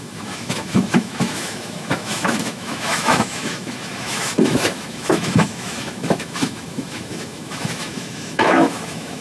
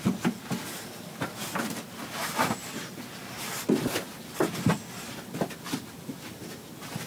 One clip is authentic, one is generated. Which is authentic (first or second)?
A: second